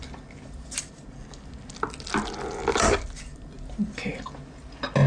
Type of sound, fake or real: real